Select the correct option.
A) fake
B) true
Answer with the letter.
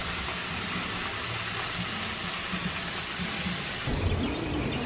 B